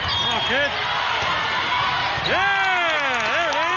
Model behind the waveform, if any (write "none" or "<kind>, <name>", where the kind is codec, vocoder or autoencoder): none